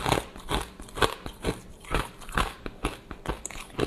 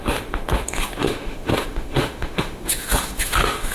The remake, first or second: second